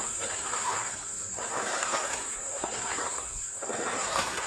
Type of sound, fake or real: fake